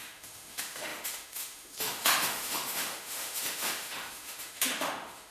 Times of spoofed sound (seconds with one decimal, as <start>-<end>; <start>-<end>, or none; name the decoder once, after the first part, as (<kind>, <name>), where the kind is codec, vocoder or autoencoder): 0.0-5.3 (autoencoder, DAC-VAE)